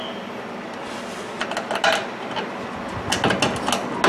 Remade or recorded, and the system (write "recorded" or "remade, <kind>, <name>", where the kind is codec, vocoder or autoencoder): recorded